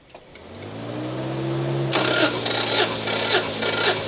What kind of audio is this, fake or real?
real